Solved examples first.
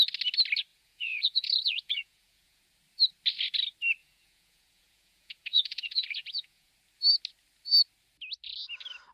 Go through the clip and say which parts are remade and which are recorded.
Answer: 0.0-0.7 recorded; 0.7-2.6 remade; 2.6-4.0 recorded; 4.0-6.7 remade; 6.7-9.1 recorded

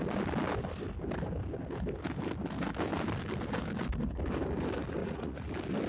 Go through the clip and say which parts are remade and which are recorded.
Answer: 0.0-5.0 recorded; 5.0-5.5 remade; 5.5-5.9 recorded

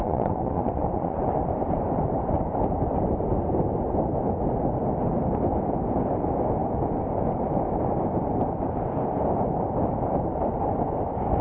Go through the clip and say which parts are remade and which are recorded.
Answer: 0.0-1.4 remade; 1.4-11.4 recorded

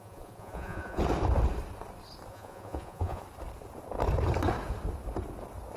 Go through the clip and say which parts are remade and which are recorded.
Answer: 0.0-1.0 remade; 1.0-2.3 recorded; 2.3-3.2 remade; 3.2-5.8 recorded

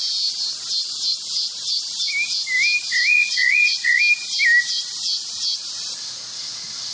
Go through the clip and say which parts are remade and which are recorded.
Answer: 0.0-3.1 recorded; 3.1-4.0 remade; 4.0-6.9 recorded

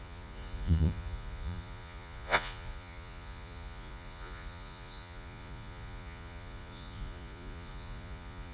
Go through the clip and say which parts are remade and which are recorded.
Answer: 0.0-8.5 remade